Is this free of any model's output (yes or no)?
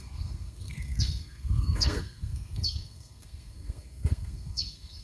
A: no